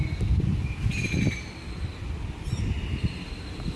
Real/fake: real